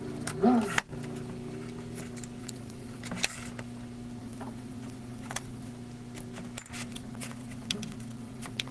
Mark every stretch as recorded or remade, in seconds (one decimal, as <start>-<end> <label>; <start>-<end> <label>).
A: 0.0-2.4 recorded; 2.4-3.0 remade; 3.0-4.2 recorded; 4.2-5.7 remade; 5.7-6.9 recorded; 6.9-8.7 remade